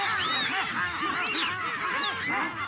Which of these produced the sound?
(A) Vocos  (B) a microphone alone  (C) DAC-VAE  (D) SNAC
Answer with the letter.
B